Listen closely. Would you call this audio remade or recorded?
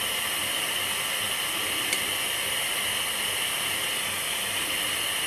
recorded